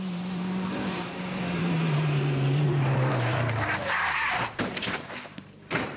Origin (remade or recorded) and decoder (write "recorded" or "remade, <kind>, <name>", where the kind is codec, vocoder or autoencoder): remade, vocoder, BigVGAN v2